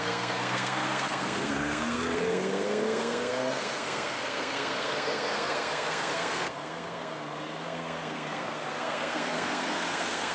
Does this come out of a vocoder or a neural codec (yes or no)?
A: yes